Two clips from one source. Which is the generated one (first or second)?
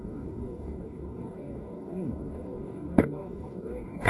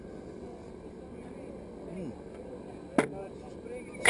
first